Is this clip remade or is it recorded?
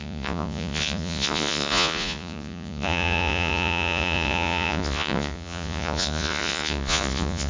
remade